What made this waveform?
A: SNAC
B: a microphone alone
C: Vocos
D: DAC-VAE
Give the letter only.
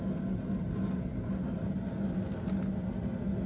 B